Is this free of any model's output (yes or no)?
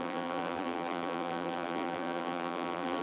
no